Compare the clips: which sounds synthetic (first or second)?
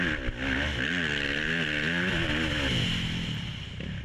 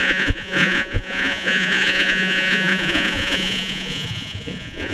second